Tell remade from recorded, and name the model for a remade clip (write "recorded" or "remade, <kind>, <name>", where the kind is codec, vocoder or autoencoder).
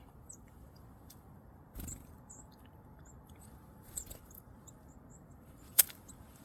remade, vocoder, BigVGAN v2